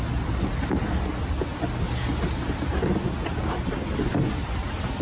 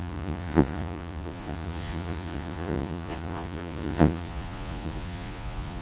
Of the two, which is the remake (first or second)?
second